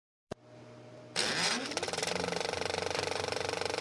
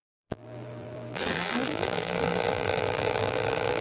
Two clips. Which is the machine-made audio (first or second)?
second